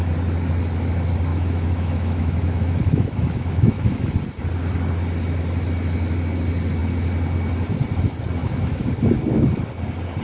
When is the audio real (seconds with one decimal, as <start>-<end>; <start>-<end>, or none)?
0.0-1.3; 4.1-8.4; 8.9-10.2